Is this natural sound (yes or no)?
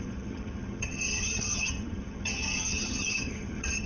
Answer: no